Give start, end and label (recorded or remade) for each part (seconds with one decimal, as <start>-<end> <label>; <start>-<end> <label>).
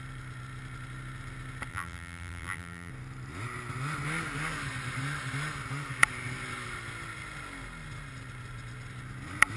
0.0-1.7 recorded; 1.7-2.9 remade; 2.9-9.6 recorded